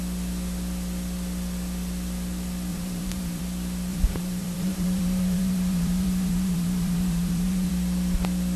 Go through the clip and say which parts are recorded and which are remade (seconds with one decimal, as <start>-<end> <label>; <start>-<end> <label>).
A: 0.0-2.7 recorded; 2.7-3.4 remade; 3.4-3.9 recorded; 3.9-7.7 remade; 7.7-8.6 recorded